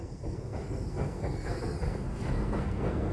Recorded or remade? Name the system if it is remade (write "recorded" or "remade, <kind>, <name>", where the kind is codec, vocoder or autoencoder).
remade, codec, SNAC